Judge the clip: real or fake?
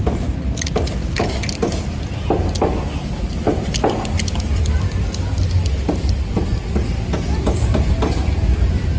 real